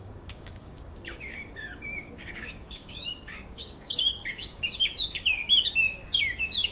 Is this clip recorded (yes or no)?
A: no